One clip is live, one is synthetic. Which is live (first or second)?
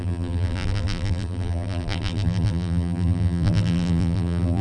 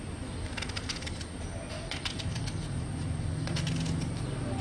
second